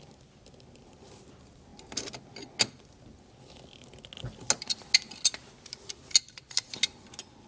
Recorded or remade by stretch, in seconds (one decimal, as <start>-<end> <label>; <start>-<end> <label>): 0.0-7.5 recorded